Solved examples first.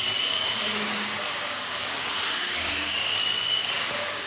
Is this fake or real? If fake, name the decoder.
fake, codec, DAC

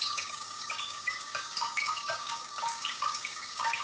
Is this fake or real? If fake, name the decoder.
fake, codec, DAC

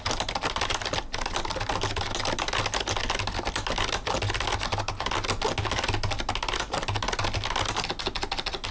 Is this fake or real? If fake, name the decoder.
real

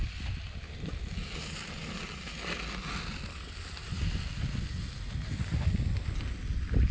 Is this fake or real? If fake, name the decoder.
real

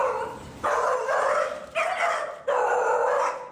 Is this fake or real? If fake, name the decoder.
real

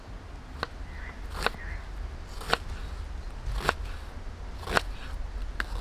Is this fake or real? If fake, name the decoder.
real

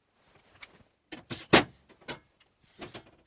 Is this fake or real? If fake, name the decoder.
real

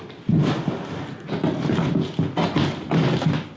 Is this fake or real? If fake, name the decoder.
real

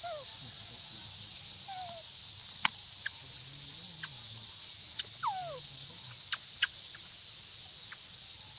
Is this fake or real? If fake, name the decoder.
real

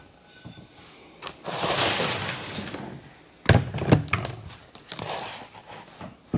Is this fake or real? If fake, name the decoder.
real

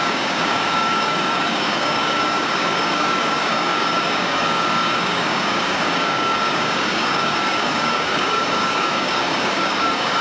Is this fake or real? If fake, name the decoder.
fake, codec, DAC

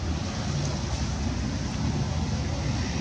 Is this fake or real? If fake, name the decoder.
real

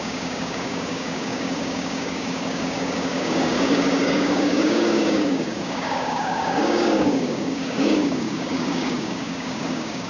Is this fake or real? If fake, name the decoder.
fake, codec, DAC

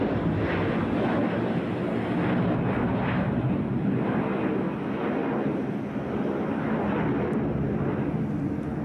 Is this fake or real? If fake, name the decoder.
real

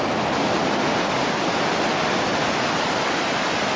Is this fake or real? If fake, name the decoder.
real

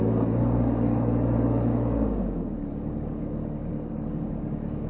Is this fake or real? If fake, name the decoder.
fake, codec, DAC